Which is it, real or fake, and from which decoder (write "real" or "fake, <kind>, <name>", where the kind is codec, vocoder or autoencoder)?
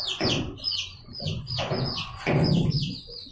fake, vocoder, Vocos